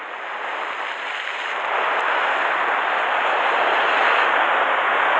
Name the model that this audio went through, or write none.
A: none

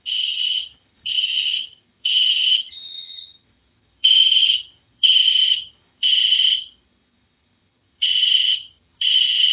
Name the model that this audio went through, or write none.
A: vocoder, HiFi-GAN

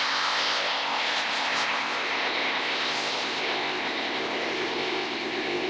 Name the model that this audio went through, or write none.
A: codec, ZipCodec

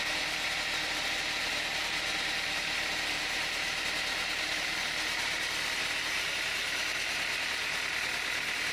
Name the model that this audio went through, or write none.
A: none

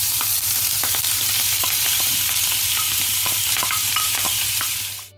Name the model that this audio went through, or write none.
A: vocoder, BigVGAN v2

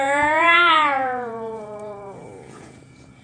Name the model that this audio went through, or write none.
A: vocoder, Vocos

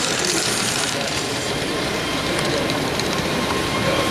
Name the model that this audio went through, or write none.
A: vocoder, BigVGAN v2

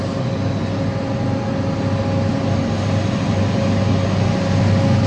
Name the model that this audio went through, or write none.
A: none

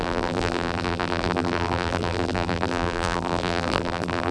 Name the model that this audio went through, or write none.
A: vocoder, BigVGAN v2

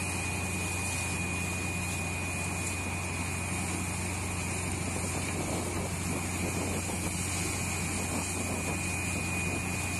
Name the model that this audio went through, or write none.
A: none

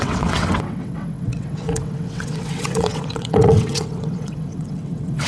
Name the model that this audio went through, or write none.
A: vocoder, WaveNeXt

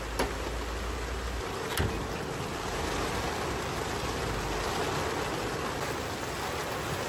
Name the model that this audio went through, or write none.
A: none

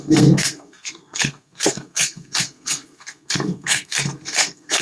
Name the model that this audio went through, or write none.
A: codec, SNAC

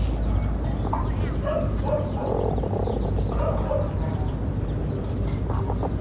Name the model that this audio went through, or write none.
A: none